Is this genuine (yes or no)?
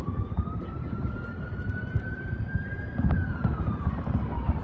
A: no